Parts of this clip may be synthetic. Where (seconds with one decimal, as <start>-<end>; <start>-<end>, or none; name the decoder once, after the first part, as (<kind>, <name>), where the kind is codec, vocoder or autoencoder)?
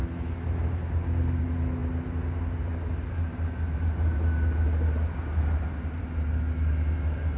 none